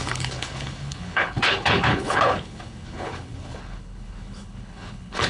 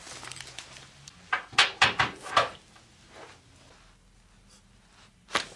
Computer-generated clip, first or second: first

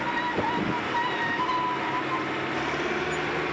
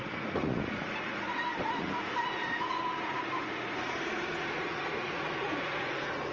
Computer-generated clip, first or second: second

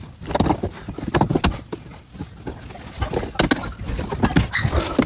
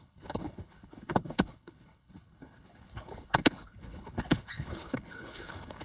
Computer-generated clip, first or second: second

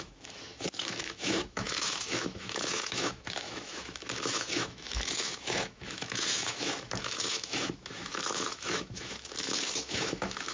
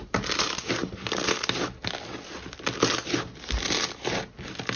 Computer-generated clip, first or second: first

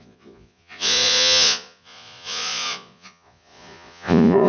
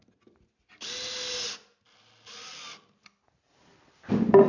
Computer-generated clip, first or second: first